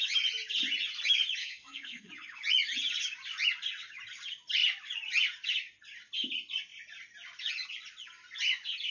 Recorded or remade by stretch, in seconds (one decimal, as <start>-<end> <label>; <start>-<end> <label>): 0.0-1.4 recorded; 1.4-2.1 remade; 2.1-8.9 recorded